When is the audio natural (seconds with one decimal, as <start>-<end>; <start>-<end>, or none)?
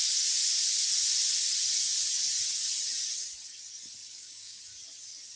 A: 0.0-4.0; 4.6-5.4